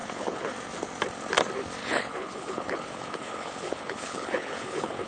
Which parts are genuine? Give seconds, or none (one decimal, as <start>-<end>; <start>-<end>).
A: 0.5-1.8